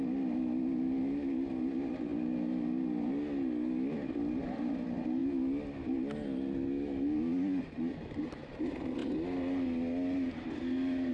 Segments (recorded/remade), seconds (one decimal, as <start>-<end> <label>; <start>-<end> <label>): 0.0-11.1 recorded